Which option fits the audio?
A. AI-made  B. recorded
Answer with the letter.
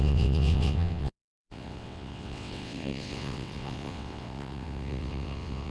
A